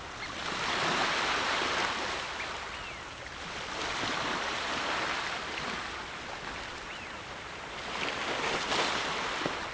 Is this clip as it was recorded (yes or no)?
yes